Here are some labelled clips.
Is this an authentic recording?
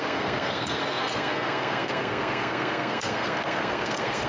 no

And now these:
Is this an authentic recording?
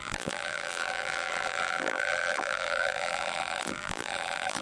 no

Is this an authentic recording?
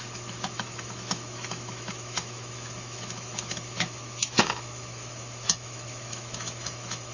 no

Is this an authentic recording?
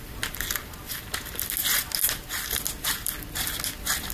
yes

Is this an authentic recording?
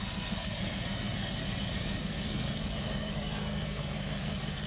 no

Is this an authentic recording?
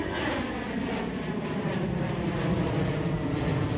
yes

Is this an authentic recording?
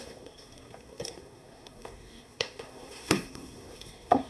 no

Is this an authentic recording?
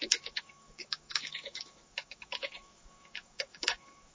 no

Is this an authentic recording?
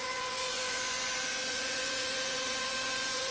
no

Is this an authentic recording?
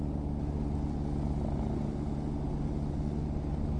yes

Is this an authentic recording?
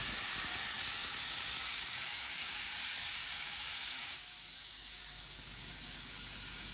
no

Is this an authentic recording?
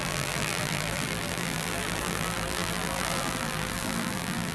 no